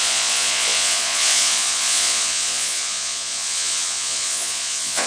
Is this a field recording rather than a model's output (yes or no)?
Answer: no